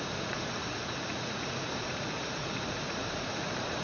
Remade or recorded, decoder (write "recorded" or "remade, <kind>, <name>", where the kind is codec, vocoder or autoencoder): remade, vocoder, Vocos